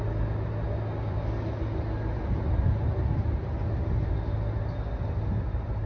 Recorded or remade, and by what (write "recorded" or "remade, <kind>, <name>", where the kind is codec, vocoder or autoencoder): recorded